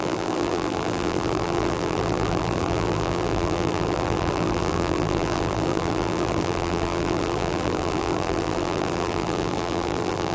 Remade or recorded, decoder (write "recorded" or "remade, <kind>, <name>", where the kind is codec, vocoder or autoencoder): remade, vocoder, BigVGAN v2